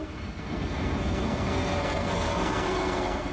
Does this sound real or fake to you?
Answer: fake